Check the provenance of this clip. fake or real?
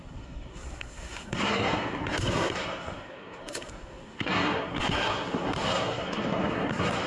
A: fake